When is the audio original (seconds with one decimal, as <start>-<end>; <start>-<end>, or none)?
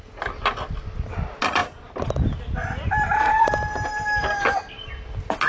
0.0-5.5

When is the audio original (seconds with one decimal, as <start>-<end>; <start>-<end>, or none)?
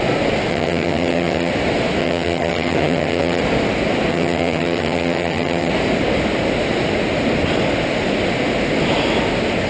0.0-0.5; 1.5-2.0; 3.4-4.1; 5.7-9.7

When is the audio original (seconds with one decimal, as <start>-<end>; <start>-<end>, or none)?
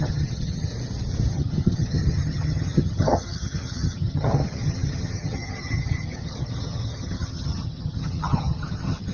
0.7-1.3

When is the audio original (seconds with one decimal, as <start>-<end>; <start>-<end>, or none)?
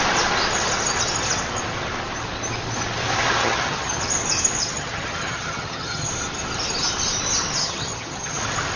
0.0-3.4; 4.0-4.6; 6.1-7.6; 8.4-8.8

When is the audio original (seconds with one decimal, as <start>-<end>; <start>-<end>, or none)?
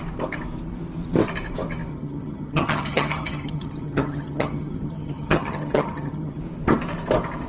0.0-1.9; 6.4-7.5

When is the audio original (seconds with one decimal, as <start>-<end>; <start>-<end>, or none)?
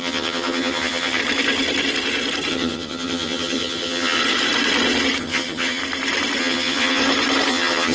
1.2-2.5; 4.2-5.2; 5.8-6.4; 7.0-7.5